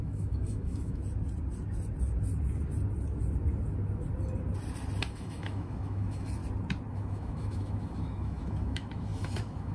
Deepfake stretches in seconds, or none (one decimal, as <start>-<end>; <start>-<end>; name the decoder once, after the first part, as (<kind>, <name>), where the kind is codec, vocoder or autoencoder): 0.0-1.0 (autoencoder, DAC-VAE); 5.1-6.4; 6.9-9.7